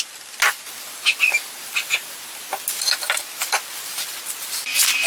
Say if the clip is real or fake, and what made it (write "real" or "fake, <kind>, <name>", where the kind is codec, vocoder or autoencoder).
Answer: real